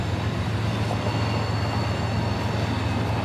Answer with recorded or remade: recorded